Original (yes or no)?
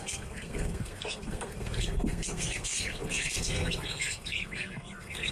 no